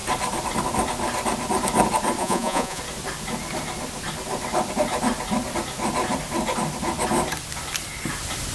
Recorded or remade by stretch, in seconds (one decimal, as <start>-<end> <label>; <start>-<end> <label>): 0.0-2.2 recorded; 2.2-2.8 remade; 2.8-8.5 recorded